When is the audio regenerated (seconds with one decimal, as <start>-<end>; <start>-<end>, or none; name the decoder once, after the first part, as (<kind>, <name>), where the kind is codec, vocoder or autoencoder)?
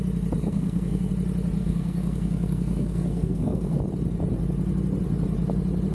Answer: 0.4-1.1 (codec, SNAC); 1.6-3.8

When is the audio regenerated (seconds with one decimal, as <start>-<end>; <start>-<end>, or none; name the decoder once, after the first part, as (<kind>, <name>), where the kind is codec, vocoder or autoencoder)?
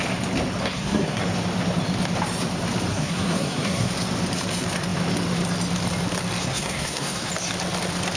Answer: 0.6-1.2 (codec, SNAC); 2.9-3.9; 6.4-7.3